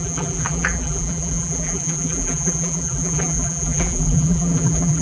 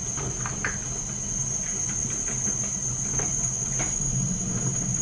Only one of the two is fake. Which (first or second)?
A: first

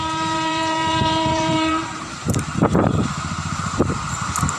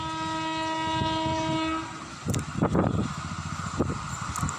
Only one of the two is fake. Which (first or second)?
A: first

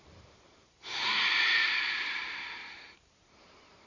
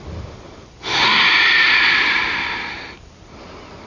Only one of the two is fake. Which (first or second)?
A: first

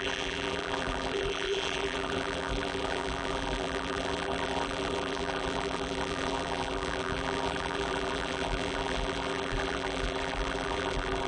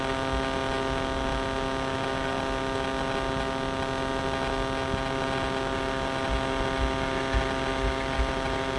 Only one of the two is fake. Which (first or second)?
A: first